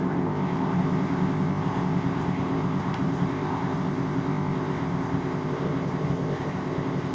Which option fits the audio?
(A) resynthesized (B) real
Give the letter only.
A